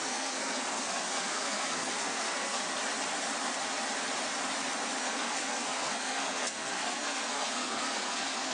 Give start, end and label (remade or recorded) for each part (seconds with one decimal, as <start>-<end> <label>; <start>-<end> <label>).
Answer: 0.0-2.6 remade; 2.6-5.0 recorded; 5.0-8.5 remade